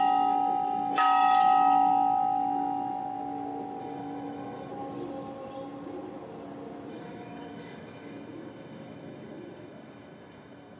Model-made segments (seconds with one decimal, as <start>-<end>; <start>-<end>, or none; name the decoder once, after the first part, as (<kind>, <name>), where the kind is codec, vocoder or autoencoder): 0.0-1.9 (autoencoder, DAC-VAE); 3.8-4.7; 6.9-10.8